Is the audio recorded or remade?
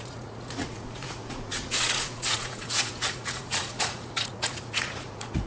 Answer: remade